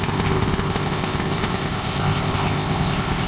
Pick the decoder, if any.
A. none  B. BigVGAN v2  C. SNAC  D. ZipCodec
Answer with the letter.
D